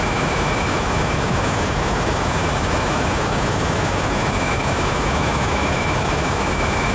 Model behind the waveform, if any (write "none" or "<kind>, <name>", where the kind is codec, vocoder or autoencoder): autoencoder, DAC-VAE